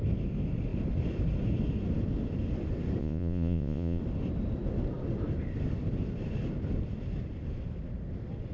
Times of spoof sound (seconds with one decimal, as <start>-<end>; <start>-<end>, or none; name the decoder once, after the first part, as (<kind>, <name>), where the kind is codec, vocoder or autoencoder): 3.0-4.0 (vocoder, Vocos)